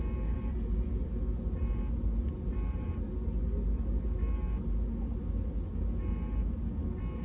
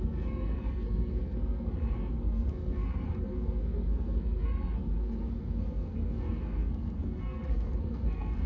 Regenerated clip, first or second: second